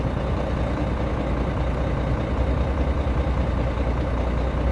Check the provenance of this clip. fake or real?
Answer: real